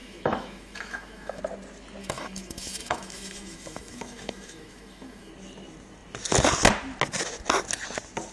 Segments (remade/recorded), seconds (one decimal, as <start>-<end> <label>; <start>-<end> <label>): 0.0-1.4 remade; 1.4-2.0 recorded; 2.0-5.3 remade; 5.3-8.3 recorded